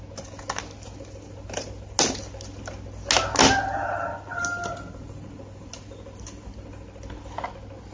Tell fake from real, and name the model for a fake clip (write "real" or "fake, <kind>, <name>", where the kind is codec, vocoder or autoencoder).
real